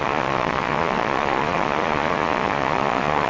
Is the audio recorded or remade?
remade